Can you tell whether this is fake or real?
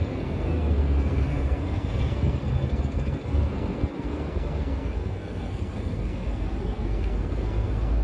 fake